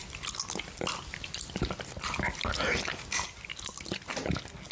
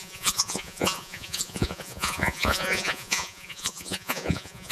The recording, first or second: first